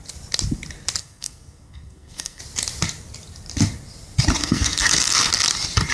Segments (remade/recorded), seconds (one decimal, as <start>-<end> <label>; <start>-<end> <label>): 0.0-1.0 recorded; 1.0-2.4 remade; 2.4-4.4 recorded; 4.4-5.3 remade; 5.3-5.9 recorded